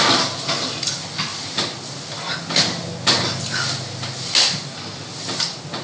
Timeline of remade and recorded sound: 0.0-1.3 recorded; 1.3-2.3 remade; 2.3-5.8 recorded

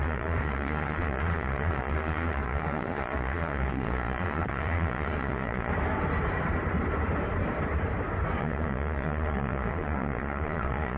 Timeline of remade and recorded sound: 0.0-5.7 remade; 5.7-8.4 recorded; 8.4-11.0 remade